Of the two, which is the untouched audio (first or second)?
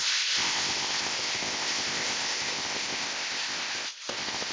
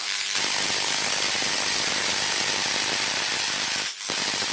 second